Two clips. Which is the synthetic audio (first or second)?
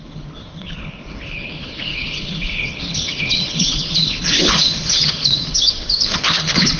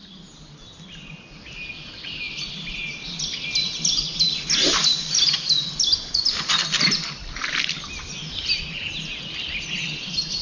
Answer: first